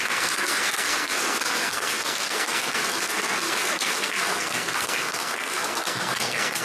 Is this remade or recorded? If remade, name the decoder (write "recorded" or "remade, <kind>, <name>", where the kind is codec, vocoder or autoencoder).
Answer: remade, codec, SNAC